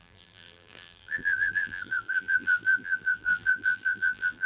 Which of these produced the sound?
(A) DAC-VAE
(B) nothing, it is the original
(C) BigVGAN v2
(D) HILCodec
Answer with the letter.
C